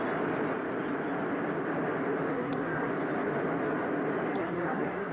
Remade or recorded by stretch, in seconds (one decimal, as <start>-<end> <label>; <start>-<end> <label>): 0.0-2.3 recorded; 2.3-2.9 remade; 2.9-4.3 recorded; 4.3-5.1 remade